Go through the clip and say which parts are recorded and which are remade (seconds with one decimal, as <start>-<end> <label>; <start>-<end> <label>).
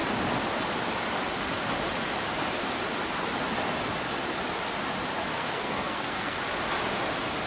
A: 0.0-5.3 recorded; 5.3-6.4 remade; 6.4-7.5 recorded